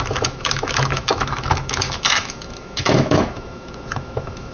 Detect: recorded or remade remade